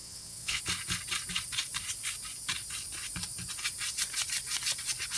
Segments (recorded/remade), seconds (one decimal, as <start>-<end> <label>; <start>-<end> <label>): 0.0-0.6 remade; 0.6-5.2 recorded

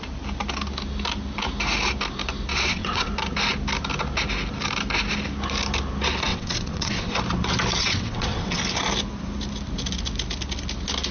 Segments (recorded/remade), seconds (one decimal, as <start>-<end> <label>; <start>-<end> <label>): 0.0-2.5 recorded; 2.5-3.1 remade; 3.1-6.3 recorded; 6.3-7.1 remade; 7.1-7.8 recorded; 7.8-8.6 remade; 8.6-11.1 recorded